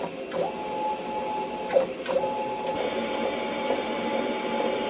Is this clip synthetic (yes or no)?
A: no